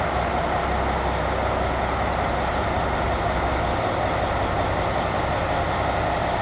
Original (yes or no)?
yes